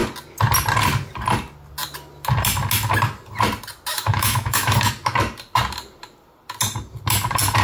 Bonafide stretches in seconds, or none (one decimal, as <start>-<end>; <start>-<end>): 0.0-3.9; 4.9-7.6